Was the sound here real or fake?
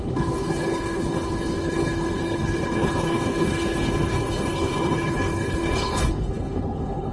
fake